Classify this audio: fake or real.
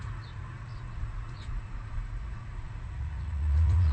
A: fake